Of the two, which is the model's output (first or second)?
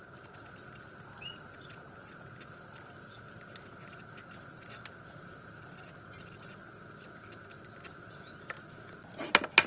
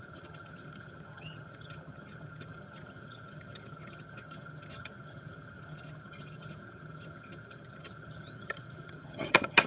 second